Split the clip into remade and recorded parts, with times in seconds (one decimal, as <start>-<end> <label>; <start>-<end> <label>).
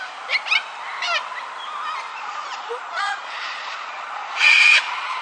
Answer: 0.0-2.1 recorded; 2.1-5.2 remade